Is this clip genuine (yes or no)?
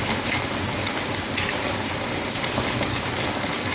yes